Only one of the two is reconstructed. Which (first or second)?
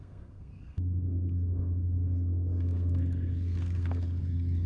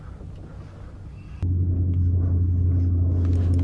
first